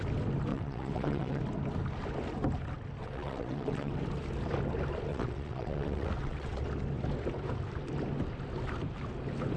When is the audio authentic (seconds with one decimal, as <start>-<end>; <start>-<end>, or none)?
0.0-0.5; 1.4-3.0; 3.9-5.1; 6.6-9.6